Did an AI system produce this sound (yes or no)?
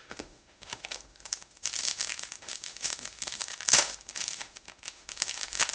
yes